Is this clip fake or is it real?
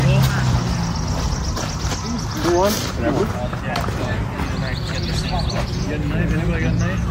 real